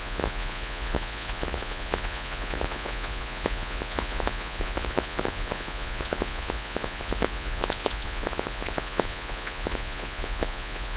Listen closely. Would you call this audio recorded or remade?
remade